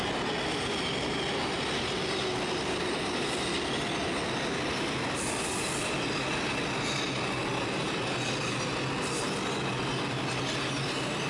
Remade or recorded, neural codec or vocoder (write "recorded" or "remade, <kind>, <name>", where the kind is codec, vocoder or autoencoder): recorded